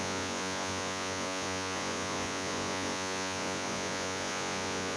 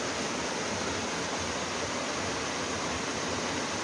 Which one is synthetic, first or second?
first